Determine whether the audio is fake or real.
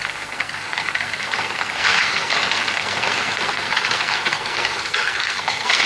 fake